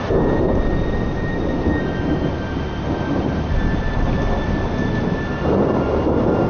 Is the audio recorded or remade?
recorded